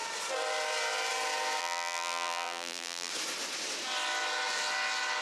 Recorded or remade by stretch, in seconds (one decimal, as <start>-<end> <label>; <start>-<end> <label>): 0.0-1.6 recorded; 1.6-3.1 remade; 3.1-5.2 recorded